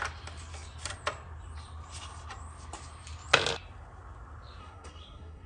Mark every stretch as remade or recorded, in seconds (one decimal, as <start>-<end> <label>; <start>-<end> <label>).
0.0-4.6 recorded; 4.6-5.5 remade